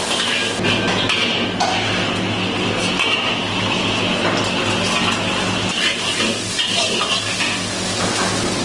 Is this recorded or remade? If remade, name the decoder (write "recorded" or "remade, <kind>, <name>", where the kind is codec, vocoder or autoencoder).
recorded